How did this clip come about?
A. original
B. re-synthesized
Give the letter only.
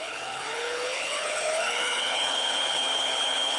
B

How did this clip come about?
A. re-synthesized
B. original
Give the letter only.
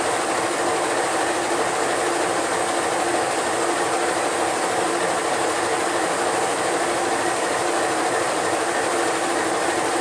B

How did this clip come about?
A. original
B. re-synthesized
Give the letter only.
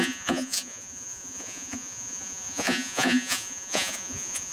B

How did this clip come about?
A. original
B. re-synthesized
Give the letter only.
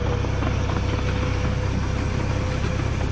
A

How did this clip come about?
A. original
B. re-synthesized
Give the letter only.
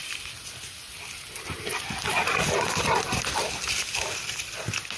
A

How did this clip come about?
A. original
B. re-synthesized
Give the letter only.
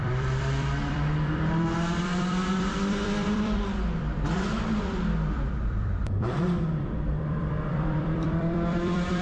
B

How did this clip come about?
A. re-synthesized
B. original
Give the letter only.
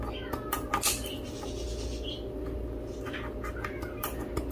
B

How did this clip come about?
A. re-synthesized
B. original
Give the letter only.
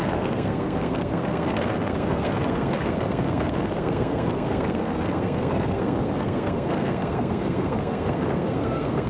A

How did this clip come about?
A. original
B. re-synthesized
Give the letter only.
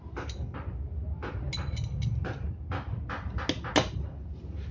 A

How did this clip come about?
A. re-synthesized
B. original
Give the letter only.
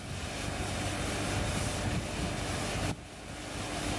B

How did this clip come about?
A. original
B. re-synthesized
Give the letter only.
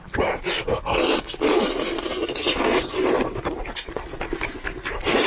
A